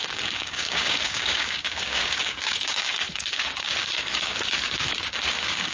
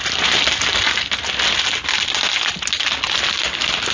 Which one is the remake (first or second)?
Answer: first